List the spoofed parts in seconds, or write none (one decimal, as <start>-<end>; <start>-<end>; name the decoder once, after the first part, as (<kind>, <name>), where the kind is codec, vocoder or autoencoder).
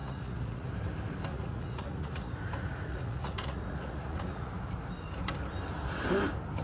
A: 0.0-0.7 (vocoder, Vocos); 1.3-2.3; 2.9-4.5